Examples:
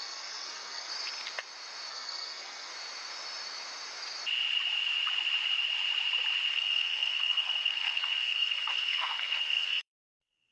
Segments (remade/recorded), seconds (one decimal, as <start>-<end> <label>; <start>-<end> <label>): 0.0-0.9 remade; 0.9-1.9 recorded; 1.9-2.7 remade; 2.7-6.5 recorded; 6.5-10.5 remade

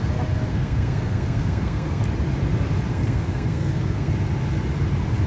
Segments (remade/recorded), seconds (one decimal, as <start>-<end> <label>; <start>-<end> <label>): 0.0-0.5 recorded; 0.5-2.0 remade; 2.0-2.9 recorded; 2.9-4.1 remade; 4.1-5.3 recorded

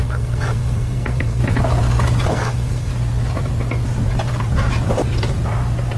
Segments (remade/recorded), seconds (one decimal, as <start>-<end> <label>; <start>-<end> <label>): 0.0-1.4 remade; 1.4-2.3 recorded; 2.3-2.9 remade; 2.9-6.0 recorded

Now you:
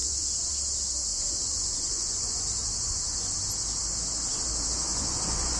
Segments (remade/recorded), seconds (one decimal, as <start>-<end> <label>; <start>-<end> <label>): 0.0-0.5 remade; 0.5-1.1 recorded; 1.1-3.4 remade; 3.4-4.9 recorded; 4.9-5.6 remade

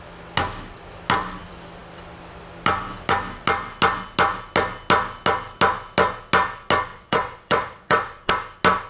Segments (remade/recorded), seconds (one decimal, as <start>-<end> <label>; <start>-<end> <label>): 0.0-6.9 recorded; 6.9-8.3 remade; 8.3-8.9 recorded

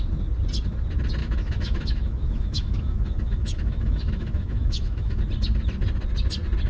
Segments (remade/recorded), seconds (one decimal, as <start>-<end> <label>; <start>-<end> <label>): 0.0-1.2 recorded; 1.2-5.2 remade; 5.2-6.7 recorded

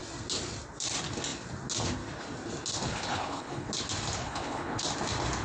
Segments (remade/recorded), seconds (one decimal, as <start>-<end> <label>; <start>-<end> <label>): 0.0-2.9 recorded; 2.9-3.7 remade; 3.7-4.2 recorded; 4.2-4.8 remade; 4.8-5.4 recorded

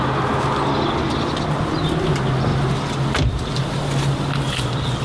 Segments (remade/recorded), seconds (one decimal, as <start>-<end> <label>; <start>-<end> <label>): 0.0-2.5 recorded; 2.5-3.6 remade; 3.6-5.0 recorded